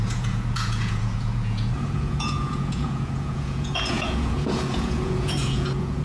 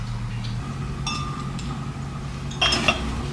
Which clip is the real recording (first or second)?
second